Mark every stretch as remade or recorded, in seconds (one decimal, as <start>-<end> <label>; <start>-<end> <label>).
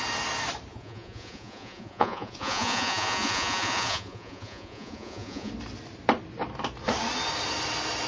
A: 0.0-0.7 recorded; 0.7-5.5 remade; 5.5-8.1 recorded